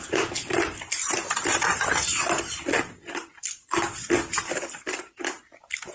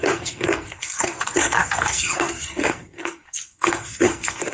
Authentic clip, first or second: first